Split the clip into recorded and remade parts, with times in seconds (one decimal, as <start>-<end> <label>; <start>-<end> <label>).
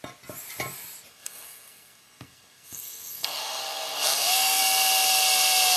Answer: 0.0-1.1 recorded; 1.1-4.6 remade; 4.6-5.8 recorded